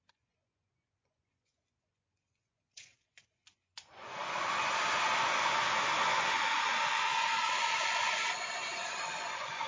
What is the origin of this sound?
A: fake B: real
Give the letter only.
A